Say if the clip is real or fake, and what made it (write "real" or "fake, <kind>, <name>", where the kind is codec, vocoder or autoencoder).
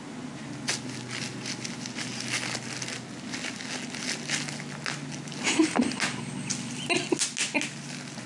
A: real